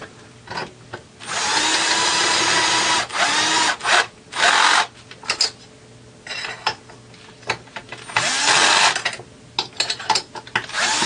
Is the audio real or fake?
real